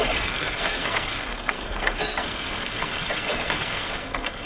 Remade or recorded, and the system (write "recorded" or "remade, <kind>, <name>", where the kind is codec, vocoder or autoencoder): remade, codec, SNAC